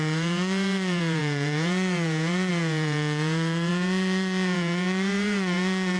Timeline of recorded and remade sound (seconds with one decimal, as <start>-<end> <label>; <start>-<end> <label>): 0.0-6.0 remade